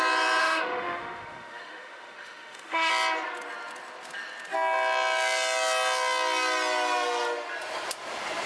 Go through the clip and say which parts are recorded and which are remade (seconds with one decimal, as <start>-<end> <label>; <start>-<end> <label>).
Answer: 0.0-0.4 recorded; 0.4-2.9 remade; 2.9-8.5 recorded